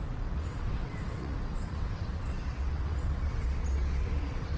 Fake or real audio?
fake